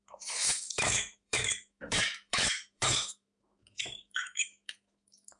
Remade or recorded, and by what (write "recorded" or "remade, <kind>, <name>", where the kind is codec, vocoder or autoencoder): remade, autoencoder, DAC-VAE